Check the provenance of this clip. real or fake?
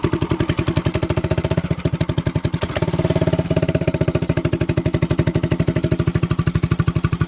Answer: real